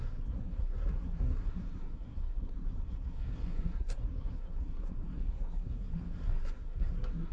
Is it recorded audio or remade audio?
remade